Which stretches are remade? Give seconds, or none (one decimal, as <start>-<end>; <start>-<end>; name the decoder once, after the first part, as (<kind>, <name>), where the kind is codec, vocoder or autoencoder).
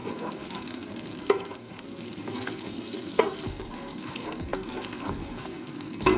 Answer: 0.0-6.2 (codec, SNAC)